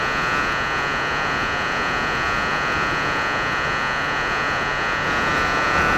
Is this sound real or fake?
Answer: fake